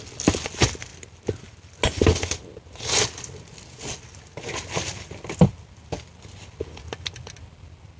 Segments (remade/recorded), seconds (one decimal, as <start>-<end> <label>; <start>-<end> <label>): 0.0-8.0 recorded